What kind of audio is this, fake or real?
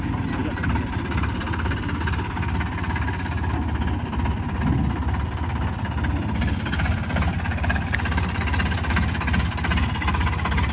real